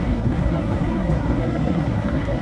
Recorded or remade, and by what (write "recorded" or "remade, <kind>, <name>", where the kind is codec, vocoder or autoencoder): remade, codec, SNAC